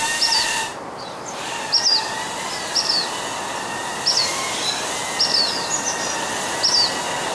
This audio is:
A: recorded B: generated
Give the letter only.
A